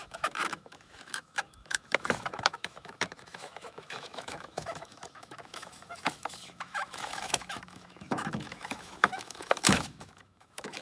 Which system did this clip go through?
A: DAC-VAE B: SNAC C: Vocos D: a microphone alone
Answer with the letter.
A